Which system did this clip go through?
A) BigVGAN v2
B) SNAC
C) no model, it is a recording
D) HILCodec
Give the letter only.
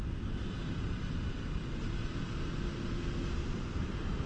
C